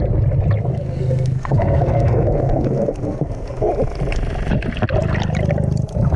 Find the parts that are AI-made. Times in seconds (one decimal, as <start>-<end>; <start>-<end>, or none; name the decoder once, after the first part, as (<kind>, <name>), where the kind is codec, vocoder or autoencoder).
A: 0.7-3.7 (codec, SNAC)

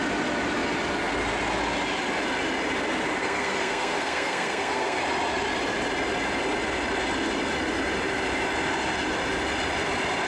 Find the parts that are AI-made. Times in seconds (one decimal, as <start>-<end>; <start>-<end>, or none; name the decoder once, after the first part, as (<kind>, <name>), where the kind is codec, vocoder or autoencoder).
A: 3.2-5.0 (codec, SNAC)